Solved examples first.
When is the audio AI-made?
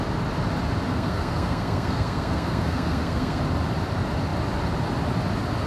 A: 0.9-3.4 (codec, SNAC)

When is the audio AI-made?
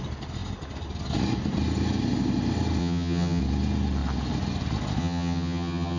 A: 2.8-3.4 (vocoder, HiFi-GAN); 5.0-6.0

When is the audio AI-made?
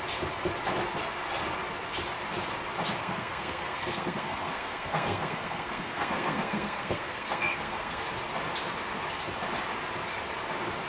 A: 3.0-8.0 (codec, SNAC)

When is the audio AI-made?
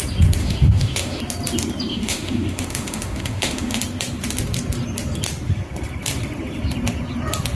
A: 0.4-1.2 (autoencoder, DAC-VAE); 1.9-3.8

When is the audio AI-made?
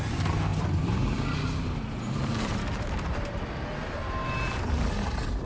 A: 0.5-3.4 (vocoder, BigVGAN v2)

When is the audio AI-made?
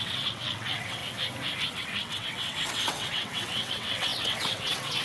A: 0.0-1.0 (vocoder, WaveNeXt); 1.7-5.0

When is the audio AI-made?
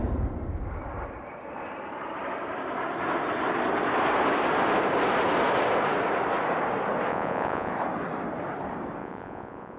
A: 7.1-7.7 (vocoder, Vocos); 9.0-9.8